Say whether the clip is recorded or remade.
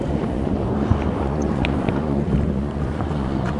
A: remade